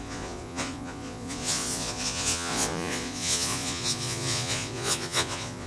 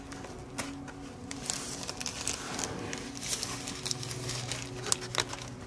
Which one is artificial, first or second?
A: first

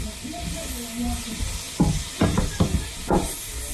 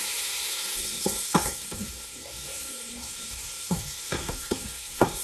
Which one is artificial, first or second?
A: second